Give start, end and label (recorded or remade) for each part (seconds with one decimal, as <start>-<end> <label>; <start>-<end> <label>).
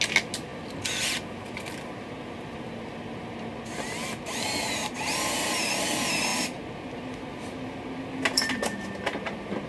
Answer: 0.0-9.7 recorded